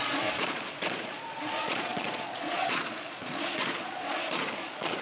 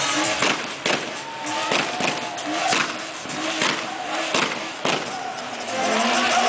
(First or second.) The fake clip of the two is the first